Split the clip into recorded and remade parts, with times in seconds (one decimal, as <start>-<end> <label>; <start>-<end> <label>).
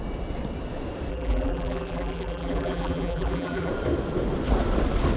0.0-1.1 recorded; 1.1-3.7 remade; 3.7-5.2 recorded